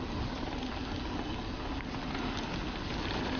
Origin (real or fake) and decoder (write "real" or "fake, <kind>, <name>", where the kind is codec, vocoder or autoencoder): real